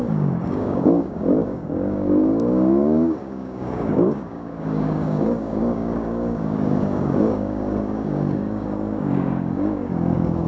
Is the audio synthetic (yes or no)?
yes